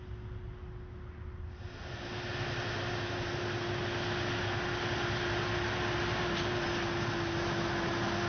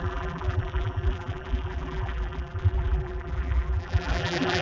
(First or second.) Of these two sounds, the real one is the first